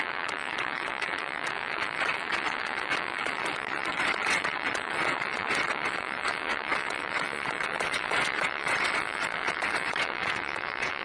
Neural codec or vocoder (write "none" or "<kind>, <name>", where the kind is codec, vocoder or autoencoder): vocoder, WaveNeXt